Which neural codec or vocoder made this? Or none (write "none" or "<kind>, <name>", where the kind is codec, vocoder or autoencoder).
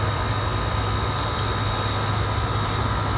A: none